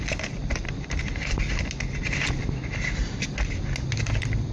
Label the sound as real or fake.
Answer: real